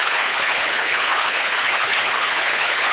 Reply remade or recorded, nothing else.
remade